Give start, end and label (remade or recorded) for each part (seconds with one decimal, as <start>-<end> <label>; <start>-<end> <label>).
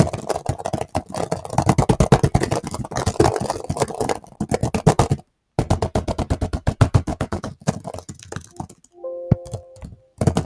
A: 0.0-7.1 recorded; 7.1-7.7 remade; 7.7-10.4 recorded